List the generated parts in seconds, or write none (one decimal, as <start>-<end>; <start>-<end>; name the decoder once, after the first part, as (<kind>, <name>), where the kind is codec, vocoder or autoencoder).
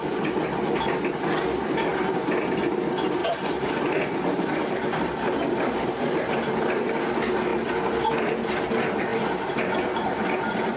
1.9-2.6 (vocoder, BigVGAN v2); 3.2-7.0